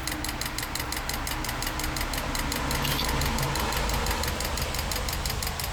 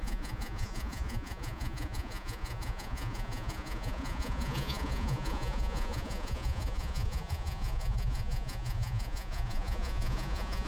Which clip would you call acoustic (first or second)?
first